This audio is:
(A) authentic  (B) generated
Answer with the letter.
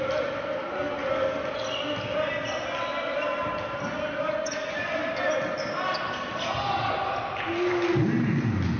A